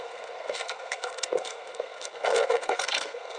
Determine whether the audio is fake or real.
fake